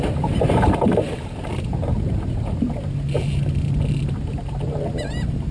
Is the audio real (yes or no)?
no